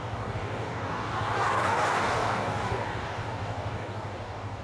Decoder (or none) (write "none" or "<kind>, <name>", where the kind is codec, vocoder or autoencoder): codec, DAC